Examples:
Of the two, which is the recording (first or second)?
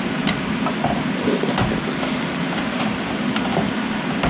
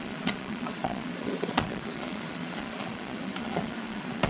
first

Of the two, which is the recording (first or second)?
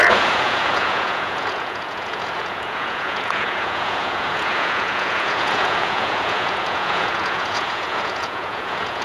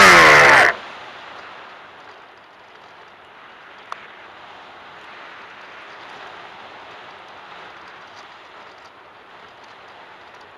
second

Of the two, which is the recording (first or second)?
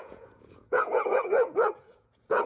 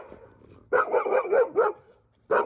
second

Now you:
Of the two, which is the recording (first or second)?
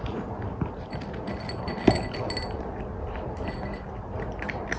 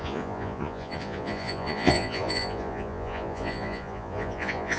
first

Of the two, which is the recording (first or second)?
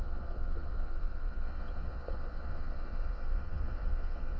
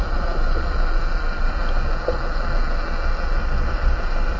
second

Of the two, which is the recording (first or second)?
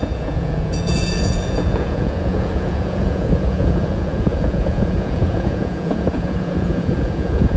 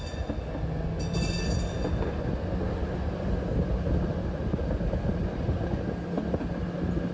second